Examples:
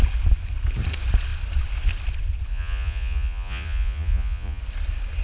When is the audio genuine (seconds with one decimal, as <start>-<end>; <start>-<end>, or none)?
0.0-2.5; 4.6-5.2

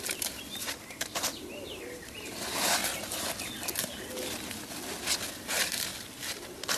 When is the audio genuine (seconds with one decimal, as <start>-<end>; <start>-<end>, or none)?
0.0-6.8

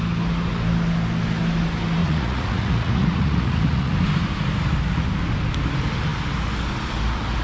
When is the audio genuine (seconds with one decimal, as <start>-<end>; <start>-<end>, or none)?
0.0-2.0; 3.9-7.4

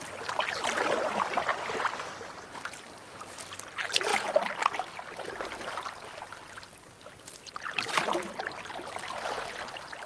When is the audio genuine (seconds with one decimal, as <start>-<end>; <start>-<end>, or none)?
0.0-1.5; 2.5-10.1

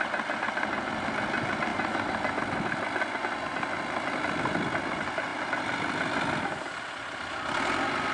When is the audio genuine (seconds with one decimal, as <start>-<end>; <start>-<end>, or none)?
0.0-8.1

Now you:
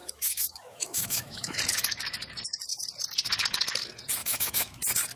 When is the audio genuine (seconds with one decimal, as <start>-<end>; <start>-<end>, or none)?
1.6-4.2; 4.8-5.2